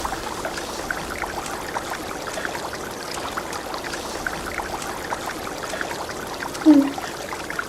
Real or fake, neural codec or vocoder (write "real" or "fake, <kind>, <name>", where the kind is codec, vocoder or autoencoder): real